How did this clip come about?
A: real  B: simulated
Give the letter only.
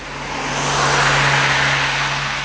A